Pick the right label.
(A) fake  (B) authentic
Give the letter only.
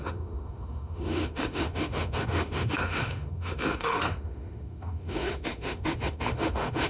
A